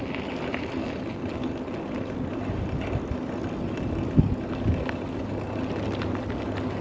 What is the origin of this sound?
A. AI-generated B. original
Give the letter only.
B